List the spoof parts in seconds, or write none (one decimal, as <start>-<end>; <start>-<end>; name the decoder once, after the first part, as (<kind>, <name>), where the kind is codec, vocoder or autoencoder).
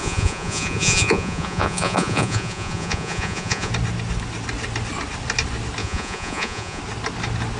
0.0-3.7 (vocoder, Vocos); 5.8-6.8